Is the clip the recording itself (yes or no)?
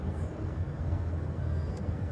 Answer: no